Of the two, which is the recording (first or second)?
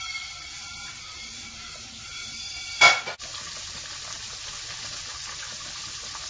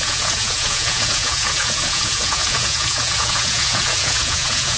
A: first